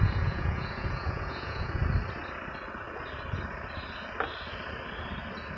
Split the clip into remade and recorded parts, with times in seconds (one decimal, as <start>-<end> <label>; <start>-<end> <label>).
0.0-1.8 remade; 1.8-5.6 recorded